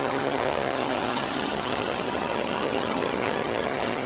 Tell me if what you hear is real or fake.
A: fake